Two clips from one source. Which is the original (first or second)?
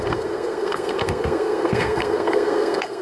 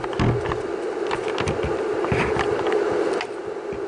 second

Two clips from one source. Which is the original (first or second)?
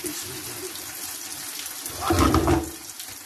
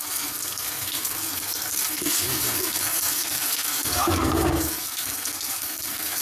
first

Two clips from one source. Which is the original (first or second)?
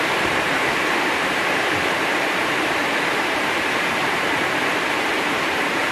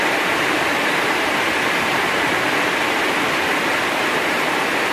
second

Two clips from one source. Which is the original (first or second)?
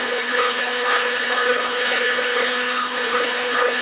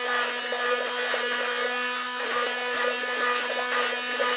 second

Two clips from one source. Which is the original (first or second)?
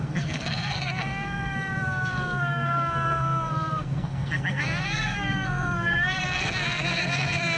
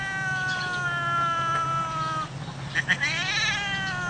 second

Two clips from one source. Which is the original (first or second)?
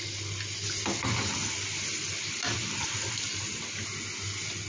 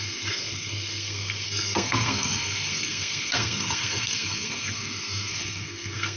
first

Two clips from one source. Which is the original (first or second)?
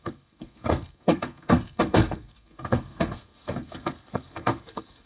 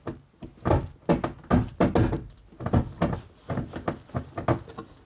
second